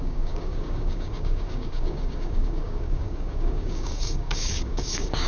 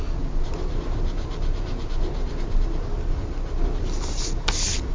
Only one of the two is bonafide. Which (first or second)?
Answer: second